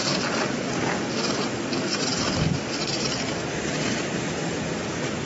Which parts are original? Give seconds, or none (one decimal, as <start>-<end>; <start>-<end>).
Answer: 3.2-5.3

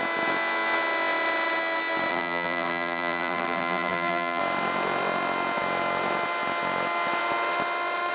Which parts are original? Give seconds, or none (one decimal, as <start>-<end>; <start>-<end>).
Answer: 0.0-2.1; 4.4-8.1